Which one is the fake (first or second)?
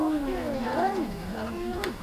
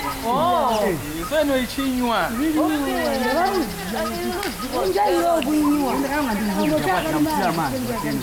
first